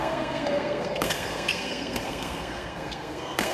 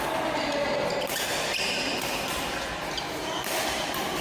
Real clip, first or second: second